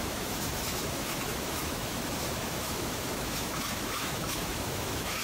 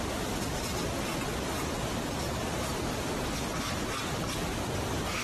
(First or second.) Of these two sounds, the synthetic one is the first